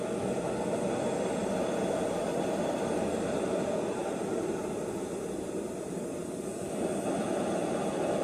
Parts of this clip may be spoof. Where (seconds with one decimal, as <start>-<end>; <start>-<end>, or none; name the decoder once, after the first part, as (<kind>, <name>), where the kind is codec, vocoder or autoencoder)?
2.3-6.2 (vocoder, BigVGAN v2)